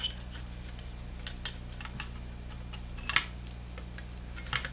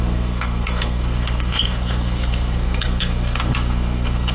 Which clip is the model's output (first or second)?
second